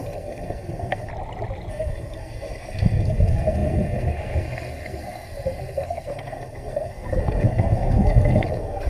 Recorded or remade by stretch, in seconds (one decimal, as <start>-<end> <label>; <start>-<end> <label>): 0.0-1.1 remade; 1.1-1.7 recorded; 1.7-8.9 remade